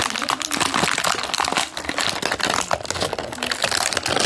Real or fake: real